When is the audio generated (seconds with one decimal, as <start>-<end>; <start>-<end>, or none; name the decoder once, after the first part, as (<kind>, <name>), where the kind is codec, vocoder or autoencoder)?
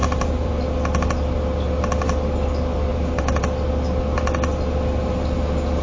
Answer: 0.0-0.5 (vocoder, BigVGAN v2); 2.9-3.4